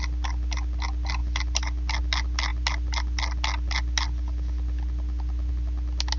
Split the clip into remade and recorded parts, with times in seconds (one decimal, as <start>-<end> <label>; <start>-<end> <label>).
0.0-6.2 recorded